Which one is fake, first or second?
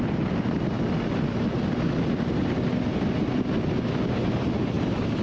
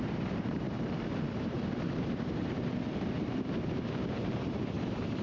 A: second